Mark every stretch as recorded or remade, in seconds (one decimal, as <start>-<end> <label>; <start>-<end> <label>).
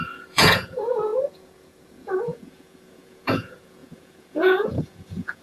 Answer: 0.0-5.4 remade